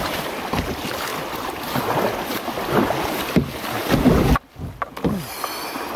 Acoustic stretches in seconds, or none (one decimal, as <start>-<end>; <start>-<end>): 0.0-6.0

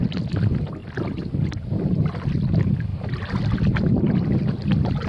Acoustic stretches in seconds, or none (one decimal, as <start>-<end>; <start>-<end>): 0.0-5.1

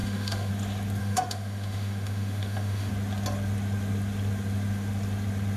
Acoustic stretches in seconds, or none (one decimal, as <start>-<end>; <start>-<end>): 0.5-1.0; 2.9-5.6

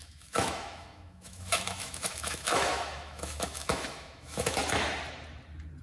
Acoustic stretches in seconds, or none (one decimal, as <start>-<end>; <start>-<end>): 4.6-5.8

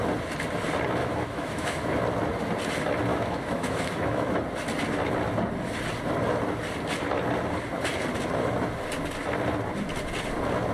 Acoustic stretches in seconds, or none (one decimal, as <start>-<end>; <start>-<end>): 0.0-1.0; 2.0-3.1; 4.3-10.7

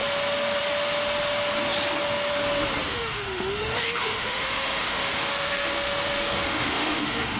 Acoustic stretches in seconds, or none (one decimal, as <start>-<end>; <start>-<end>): 0.0-2.9

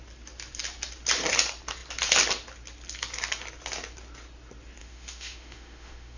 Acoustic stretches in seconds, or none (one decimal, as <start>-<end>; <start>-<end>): 0.0-4.8